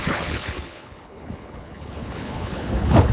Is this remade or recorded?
remade